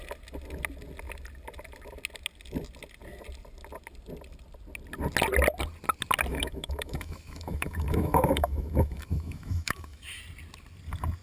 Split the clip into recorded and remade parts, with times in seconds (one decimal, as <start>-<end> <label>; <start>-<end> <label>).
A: 0.0-6.3 recorded; 6.3-10.2 remade; 10.2-11.2 recorded